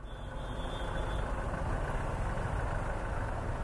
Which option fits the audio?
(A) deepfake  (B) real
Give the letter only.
B